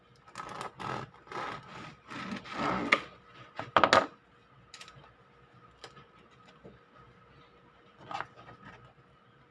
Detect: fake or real real